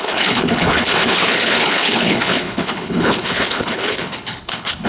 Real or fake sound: fake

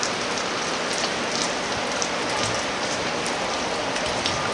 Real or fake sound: real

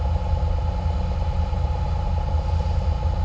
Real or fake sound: real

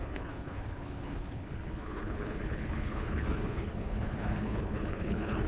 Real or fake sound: fake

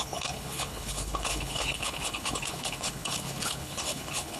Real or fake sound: fake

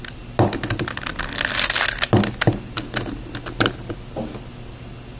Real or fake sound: real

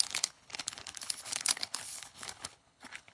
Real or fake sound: fake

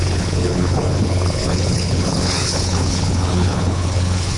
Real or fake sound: fake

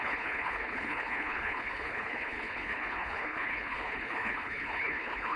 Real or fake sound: fake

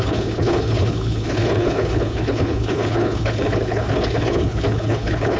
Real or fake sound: fake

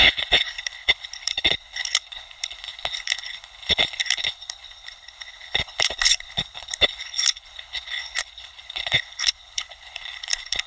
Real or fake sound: fake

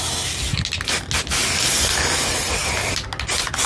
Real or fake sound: real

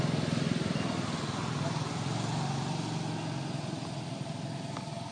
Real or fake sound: real